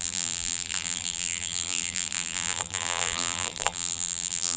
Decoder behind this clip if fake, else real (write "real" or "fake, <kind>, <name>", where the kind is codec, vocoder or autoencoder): fake, vocoder, BigVGAN v2